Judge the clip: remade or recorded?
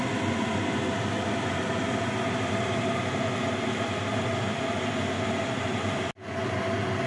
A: recorded